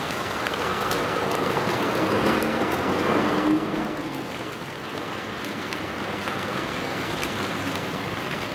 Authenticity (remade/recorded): remade